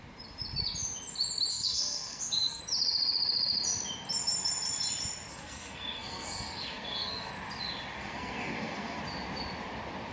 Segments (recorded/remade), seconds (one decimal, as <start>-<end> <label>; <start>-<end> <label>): 0.0-1.5 recorded; 1.5-2.6 remade; 2.6-5.3 recorded; 5.3-7.3 remade; 7.3-8.0 recorded; 8.0-9.0 remade; 9.0-10.1 recorded